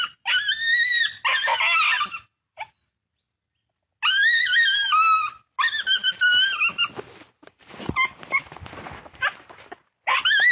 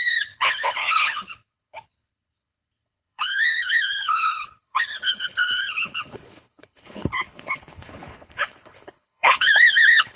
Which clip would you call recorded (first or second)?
first